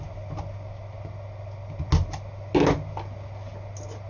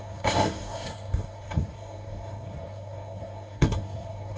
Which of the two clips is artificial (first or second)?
second